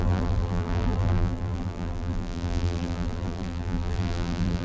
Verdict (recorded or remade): remade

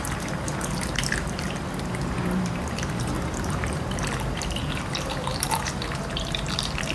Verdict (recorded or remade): remade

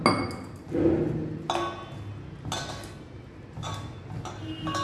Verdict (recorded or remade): recorded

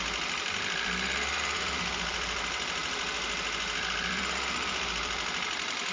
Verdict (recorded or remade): remade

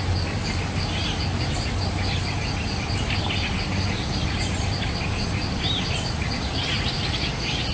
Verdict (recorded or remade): remade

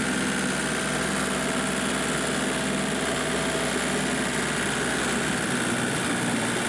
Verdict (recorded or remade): recorded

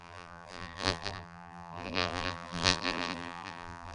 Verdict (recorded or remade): remade